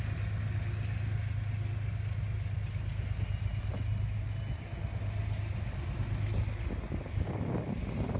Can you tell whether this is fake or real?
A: real